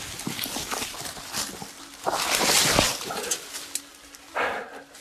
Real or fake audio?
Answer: real